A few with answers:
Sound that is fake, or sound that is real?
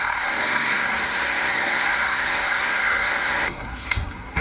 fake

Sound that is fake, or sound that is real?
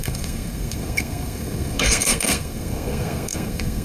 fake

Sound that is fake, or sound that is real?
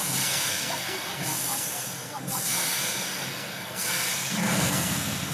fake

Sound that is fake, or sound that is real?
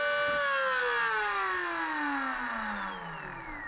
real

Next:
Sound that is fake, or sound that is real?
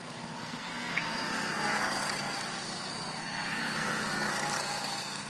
fake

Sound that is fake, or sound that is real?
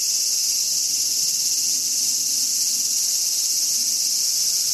real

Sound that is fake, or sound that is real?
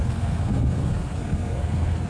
fake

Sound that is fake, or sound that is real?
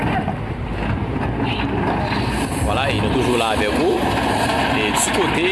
real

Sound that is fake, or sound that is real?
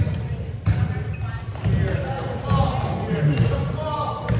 real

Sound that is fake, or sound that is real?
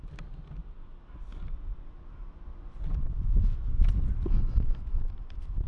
real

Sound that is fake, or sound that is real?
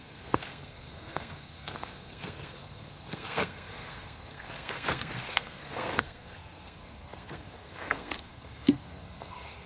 fake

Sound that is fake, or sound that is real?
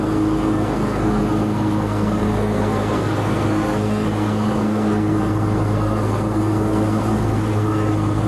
fake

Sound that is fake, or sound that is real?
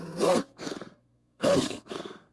fake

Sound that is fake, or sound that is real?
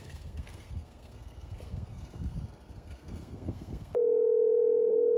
fake